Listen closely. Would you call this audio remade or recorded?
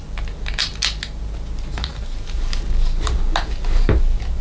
recorded